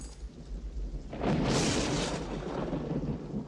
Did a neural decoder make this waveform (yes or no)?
no